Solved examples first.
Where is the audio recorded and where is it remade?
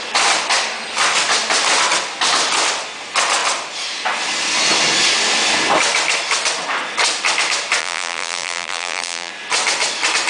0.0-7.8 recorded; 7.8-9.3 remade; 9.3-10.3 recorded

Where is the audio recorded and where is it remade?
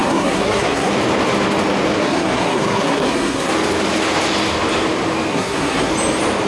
0.0-0.9 remade; 0.9-2.0 recorded; 2.0-3.5 remade; 3.5-5.3 recorded; 5.3-5.9 remade; 5.9-6.5 recorded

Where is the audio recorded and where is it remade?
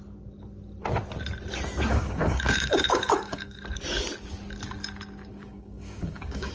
0.0-1.9 recorded; 1.9-3.6 remade; 3.6-5.3 recorded; 5.3-6.5 remade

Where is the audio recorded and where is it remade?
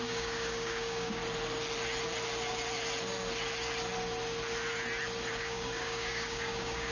0.0-1.2 remade; 1.2-5.3 recorded; 5.3-6.9 remade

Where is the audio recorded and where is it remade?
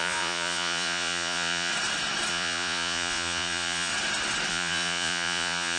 0.0-1.7 remade; 1.7-2.3 recorded; 2.3-3.9 remade; 3.9-4.5 recorded; 4.5-5.8 remade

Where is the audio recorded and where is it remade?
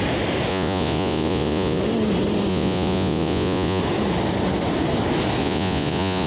0.0-0.5 recorded; 0.5-1.8 remade; 1.8-2.5 recorded; 2.5-3.8 remade; 3.8-5.4 recorded; 5.4-6.3 remade